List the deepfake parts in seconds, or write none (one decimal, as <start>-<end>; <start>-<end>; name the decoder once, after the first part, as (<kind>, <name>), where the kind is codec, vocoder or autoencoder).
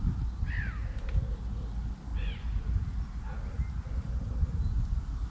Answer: 2.1-2.6 (vocoder, Vocos)